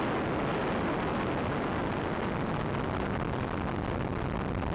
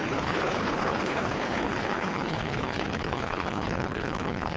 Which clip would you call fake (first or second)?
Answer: second